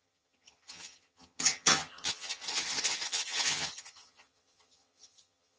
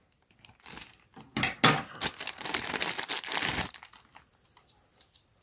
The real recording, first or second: second